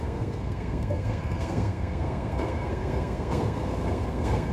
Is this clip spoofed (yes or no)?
yes